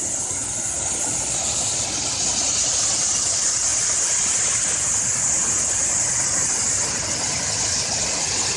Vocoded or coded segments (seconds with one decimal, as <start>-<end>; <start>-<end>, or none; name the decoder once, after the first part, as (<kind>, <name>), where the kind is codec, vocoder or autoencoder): none